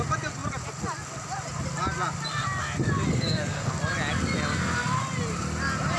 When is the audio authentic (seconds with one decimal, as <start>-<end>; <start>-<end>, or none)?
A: 0.0-3.1; 3.7-6.0

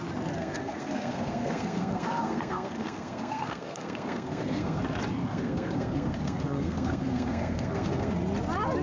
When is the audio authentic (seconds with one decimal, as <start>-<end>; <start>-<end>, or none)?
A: 0.0-0.4; 4.8-5.2; 8.1-8.8

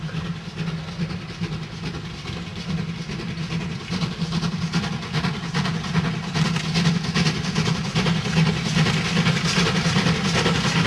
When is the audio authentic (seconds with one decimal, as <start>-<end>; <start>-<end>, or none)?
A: 0.0-10.9

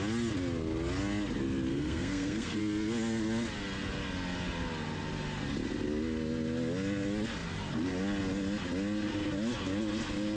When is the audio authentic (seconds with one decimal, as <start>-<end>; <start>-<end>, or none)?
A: 0.0-1.7; 2.6-10.4

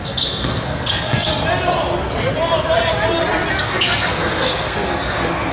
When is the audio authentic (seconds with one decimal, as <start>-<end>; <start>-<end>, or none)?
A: 1.3-3.6